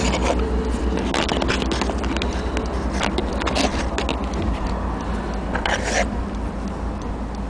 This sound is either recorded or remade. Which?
recorded